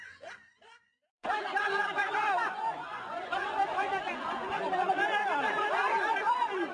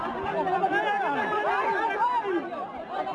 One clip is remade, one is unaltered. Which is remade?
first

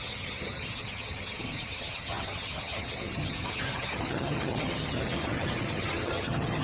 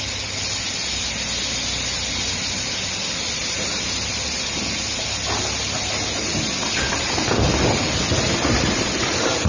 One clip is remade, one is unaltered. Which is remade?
first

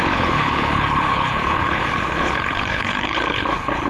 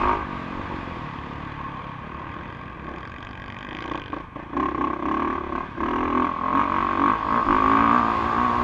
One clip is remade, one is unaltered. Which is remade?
first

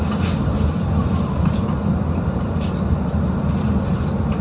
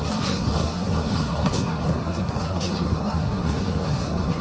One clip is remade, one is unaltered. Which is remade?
second